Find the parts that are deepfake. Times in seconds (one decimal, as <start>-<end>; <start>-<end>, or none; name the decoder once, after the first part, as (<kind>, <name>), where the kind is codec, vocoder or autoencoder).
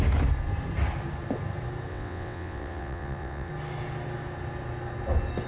1.9-3.5 (vocoder, WaveNeXt)